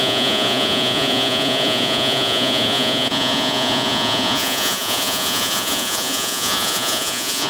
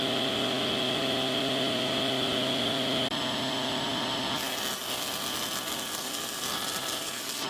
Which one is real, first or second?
second